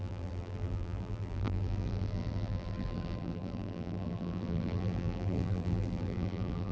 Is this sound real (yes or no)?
no